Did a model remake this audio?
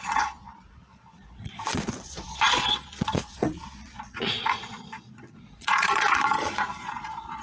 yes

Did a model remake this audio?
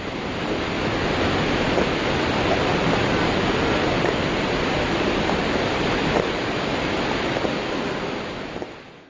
no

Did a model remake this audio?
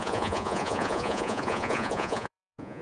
yes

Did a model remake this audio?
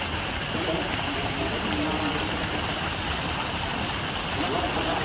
no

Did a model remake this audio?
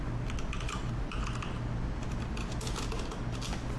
no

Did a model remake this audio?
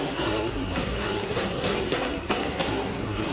yes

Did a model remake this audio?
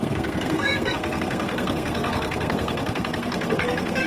yes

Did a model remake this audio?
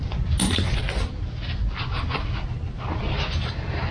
no